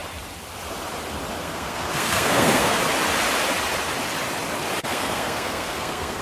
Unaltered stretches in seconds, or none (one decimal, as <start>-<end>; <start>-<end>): 0.0-1.4; 2.8-4.8